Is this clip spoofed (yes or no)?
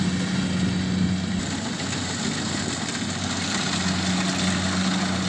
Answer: no